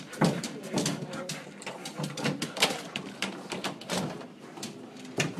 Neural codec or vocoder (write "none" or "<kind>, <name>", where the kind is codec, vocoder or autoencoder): vocoder, BigVGAN v2